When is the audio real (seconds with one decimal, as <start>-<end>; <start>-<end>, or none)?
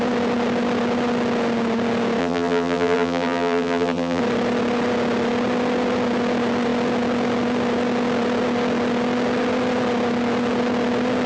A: 0.0-2.2; 4.2-11.3